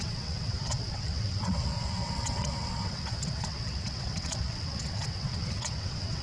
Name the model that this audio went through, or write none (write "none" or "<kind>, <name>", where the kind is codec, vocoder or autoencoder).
vocoder, WaveNeXt